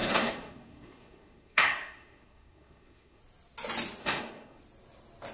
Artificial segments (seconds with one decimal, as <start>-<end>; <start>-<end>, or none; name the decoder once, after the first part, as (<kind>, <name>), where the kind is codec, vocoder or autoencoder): 0.0-3.2 (codec, SNAC); 4.0-4.6